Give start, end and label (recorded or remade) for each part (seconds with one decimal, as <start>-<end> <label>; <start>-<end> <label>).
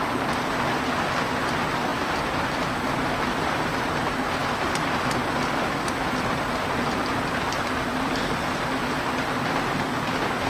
0.0-1.9 recorded; 1.9-2.5 remade; 2.5-4.4 recorded; 4.4-8.8 remade; 8.8-10.5 recorded